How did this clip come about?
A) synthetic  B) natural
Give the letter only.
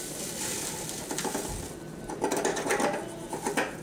B